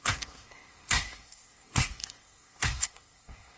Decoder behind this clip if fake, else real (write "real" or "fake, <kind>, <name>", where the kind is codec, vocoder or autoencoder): fake, codec, SNAC